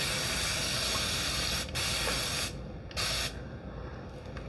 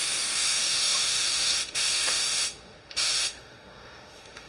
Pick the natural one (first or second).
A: first